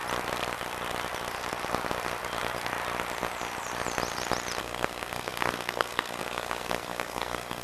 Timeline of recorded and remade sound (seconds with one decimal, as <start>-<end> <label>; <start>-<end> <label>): 0.0-4.6 recorded; 4.6-7.6 remade